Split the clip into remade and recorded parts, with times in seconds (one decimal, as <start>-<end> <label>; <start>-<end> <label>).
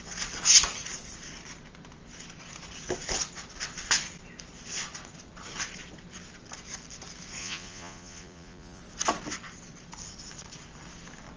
0.0-7.4 recorded; 7.4-8.8 remade; 8.8-11.4 recorded